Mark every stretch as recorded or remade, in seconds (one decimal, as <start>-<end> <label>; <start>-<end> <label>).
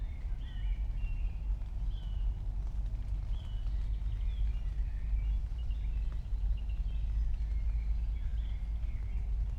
0.0-9.6 recorded